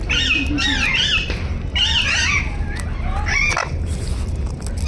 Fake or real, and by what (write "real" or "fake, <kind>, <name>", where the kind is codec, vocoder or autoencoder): real